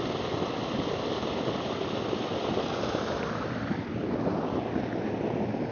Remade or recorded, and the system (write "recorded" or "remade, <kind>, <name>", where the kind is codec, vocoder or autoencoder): recorded